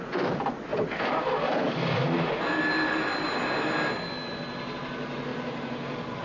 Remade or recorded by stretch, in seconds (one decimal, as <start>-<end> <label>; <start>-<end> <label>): 0.0-0.7 recorded; 0.7-1.5 remade; 1.5-5.3 recorded; 5.3-6.2 remade